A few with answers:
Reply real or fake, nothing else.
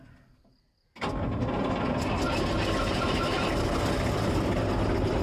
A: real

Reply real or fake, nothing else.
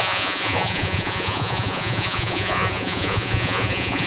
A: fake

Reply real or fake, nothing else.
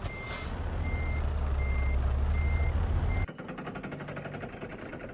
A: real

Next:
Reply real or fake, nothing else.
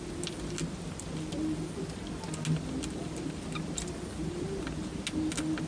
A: real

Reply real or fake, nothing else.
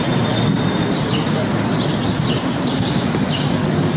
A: real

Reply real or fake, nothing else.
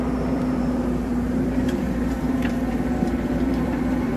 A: fake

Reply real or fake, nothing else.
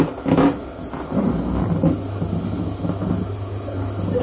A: real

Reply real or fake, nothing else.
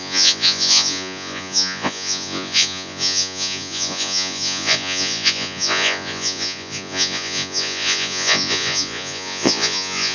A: fake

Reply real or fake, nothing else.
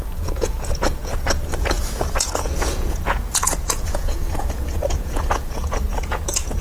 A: fake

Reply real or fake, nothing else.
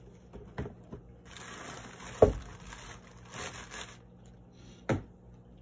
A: real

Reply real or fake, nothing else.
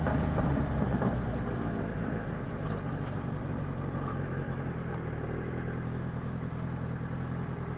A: real